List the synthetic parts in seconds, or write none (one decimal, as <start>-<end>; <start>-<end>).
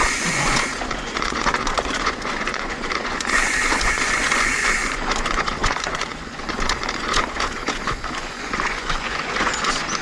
0.0-10.0